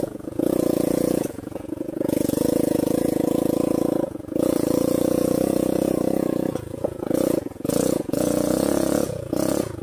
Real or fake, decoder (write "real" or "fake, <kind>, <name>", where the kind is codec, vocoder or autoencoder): fake, vocoder, Vocos